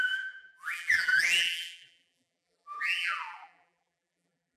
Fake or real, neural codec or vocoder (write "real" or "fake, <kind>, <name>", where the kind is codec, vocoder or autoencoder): fake, vocoder, BigVGAN v2